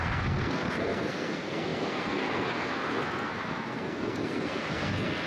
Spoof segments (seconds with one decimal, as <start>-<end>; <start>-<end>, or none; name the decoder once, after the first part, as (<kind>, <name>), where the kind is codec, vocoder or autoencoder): 0.0-5.3 (codec, SNAC)